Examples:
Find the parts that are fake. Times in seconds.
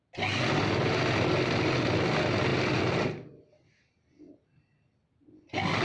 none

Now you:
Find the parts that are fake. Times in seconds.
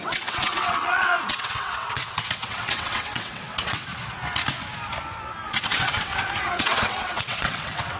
0.0-3.9; 5.5-6.1; 6.6-8.0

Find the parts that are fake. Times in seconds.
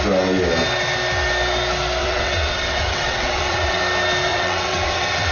2.0-3.8; 4.3-5.3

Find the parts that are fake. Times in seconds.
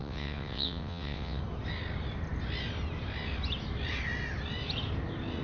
0.0-1.4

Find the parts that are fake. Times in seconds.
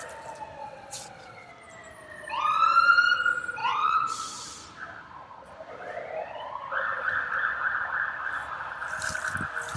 0.6-1.5; 3.6-4.1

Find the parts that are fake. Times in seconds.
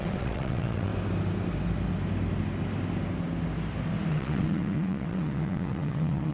0.0-0.9; 4.1-6.3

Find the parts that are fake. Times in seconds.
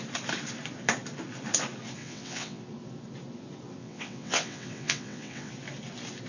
2.0-2.6; 3.8-5.5